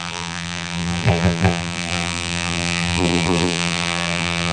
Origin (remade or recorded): remade